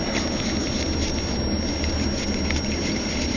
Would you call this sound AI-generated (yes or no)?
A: no